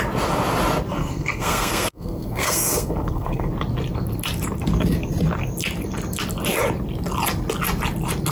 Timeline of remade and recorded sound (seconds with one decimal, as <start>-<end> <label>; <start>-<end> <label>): 0.0-1.0 recorded; 1.0-3.5 remade; 3.5-8.3 recorded